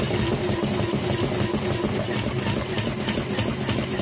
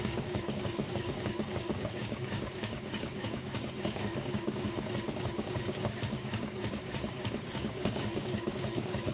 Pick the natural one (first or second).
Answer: first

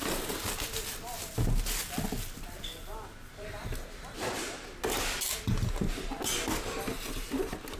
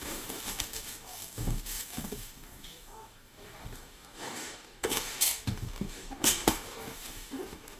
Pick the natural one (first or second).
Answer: first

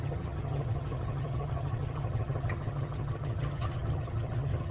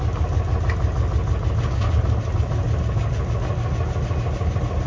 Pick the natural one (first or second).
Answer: second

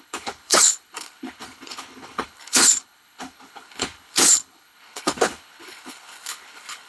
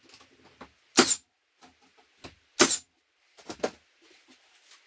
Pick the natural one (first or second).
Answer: second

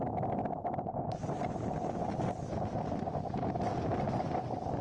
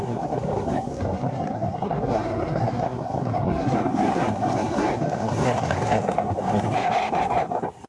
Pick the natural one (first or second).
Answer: first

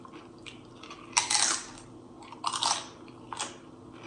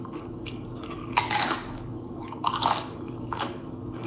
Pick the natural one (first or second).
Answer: first